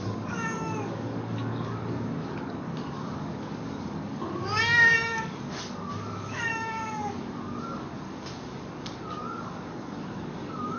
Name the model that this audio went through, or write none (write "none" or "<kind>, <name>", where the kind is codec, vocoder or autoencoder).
codec, DAC